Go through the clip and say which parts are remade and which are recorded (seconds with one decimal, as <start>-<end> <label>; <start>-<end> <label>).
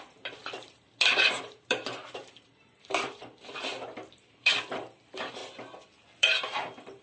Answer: 0.0-5.4 remade; 5.4-6.2 recorded; 6.2-7.0 remade